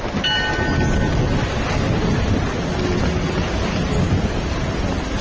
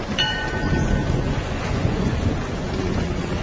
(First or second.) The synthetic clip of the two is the second